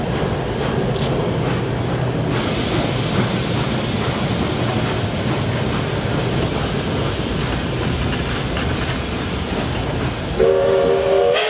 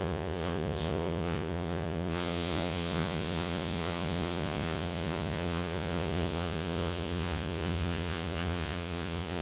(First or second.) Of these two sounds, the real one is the first